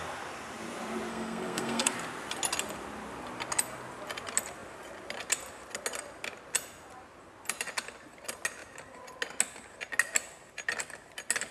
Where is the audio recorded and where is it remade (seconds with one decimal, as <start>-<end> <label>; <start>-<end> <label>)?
0.0-1.1 recorded; 1.1-1.9 remade; 1.9-11.5 recorded